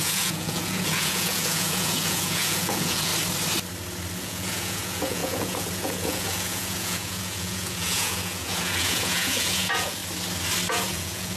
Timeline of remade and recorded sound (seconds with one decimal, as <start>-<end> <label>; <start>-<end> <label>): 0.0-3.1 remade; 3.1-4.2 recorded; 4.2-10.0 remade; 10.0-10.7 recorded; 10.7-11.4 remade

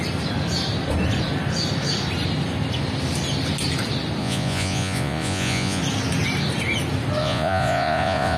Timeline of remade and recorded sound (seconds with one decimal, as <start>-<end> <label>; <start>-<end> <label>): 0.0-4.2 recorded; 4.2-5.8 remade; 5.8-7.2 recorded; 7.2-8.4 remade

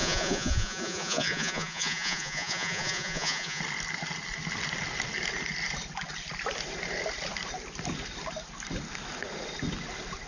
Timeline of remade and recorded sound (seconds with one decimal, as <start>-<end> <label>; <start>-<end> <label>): 0.0-3.6 remade; 3.6-10.3 recorded

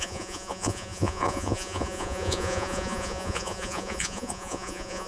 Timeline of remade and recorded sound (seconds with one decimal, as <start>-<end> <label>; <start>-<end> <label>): 0.0-5.1 remade

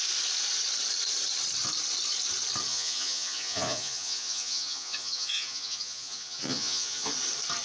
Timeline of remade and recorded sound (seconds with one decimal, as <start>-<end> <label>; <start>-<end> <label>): 0.0-2.7 recorded; 2.7-7.1 remade; 7.1-7.6 recorded

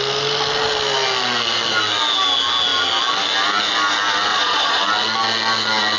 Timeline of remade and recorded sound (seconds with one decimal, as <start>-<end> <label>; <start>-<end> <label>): 0.0-4.3 recorded; 4.3-4.8 remade; 4.8-6.0 recorded